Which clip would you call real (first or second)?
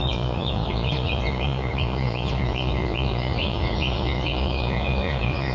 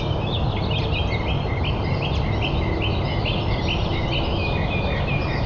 second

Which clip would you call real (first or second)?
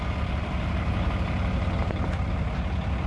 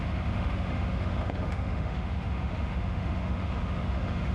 first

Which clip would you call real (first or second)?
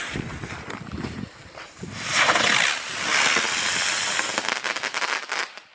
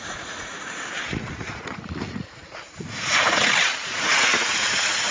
first